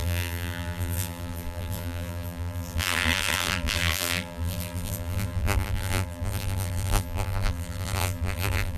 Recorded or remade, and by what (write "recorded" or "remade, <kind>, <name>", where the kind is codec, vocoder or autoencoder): remade, vocoder, BigVGAN v2